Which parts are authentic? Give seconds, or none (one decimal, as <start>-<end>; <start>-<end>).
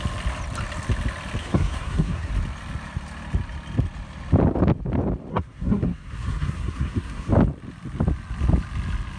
0.0-1.4; 2.3-5.3; 7.3-9.2